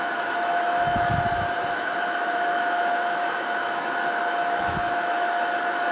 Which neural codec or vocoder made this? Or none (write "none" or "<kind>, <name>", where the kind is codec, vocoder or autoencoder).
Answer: autoencoder, DAC-VAE